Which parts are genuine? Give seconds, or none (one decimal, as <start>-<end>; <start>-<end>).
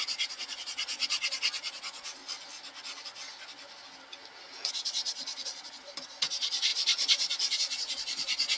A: 2.2-4.7